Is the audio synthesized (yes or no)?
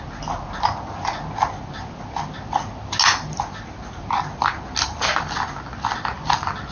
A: no